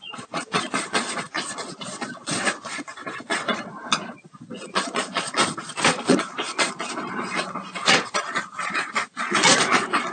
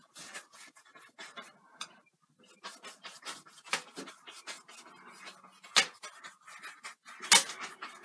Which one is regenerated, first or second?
first